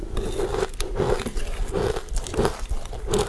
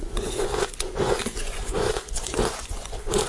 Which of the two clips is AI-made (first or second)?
second